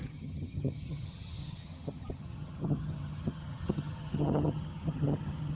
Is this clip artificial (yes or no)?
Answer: yes